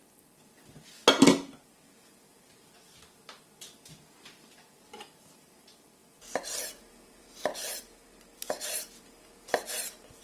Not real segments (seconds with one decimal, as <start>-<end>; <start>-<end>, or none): 0.0-1.0; 2.0-6.0; 6.9-7.5; 8.6-10.2